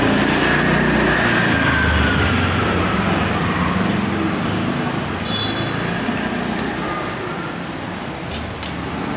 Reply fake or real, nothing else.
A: real